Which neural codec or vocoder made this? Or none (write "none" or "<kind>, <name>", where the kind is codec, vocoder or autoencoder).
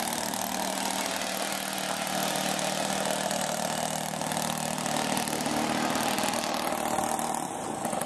none